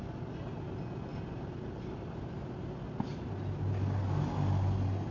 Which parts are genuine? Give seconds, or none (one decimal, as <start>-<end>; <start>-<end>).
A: 0.0-5.1